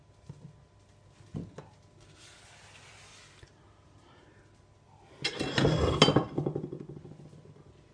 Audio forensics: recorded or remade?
recorded